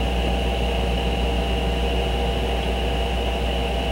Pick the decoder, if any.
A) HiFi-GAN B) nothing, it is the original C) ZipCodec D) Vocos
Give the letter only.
B